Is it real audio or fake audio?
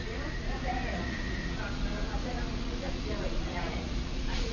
fake